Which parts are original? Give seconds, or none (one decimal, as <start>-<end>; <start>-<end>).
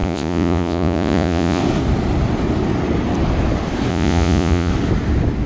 1.6-3.9; 4.7-5.5